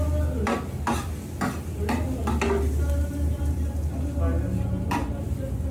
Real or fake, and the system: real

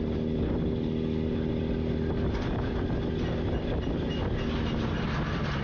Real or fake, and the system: real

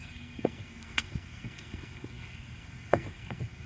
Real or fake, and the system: fake, codec, SNAC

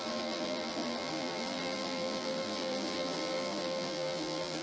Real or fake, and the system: fake, vocoder, BigVGAN v2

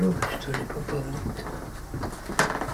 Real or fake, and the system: real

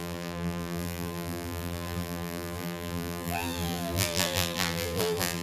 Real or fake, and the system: fake, vocoder, BigVGAN v2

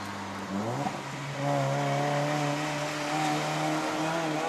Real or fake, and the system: real